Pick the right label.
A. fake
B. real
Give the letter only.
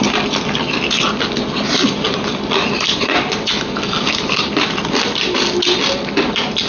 B